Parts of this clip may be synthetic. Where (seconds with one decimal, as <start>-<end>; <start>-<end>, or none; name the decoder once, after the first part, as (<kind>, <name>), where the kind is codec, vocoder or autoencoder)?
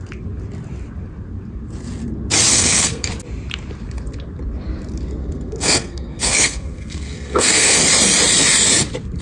2.5-3.1 (codec, SNAC); 5.2-7.8